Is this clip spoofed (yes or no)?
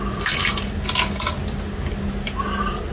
no